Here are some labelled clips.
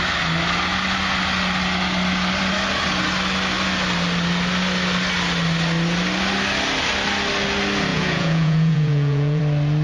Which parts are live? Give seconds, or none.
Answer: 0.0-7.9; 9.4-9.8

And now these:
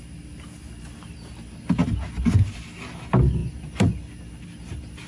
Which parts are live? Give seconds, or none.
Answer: 0.0-5.1

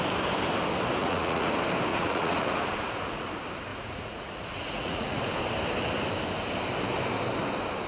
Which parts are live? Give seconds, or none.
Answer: 0.0-1.0; 1.5-1.9; 3.3-3.7; 5.2-7.9

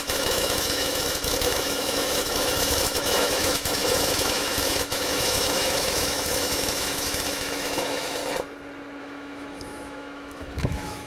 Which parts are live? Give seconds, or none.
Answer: 8.2-9.0

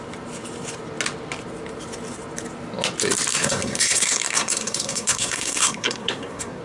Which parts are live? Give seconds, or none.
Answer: 0.0-3.3

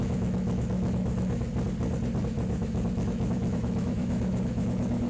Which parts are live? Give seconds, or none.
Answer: 1.5-2.2

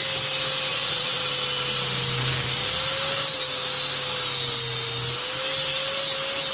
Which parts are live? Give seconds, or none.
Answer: 0.0-0.7; 1.2-6.5

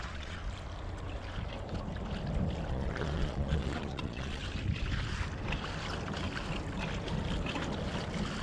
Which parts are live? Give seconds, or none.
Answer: 0.4-2.7; 4.4-8.4